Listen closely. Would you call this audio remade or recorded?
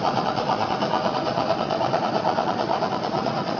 remade